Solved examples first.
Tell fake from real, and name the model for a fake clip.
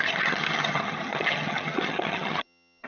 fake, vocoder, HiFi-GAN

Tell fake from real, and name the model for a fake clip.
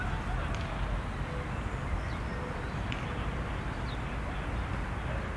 real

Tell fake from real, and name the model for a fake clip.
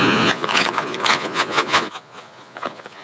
fake, vocoder, Vocos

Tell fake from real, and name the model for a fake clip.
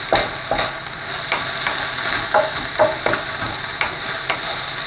real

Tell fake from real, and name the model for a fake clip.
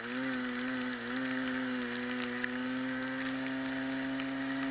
real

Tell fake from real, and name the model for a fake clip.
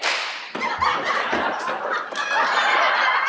real